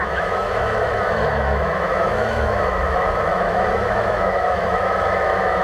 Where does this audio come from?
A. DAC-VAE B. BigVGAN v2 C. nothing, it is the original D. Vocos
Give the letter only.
A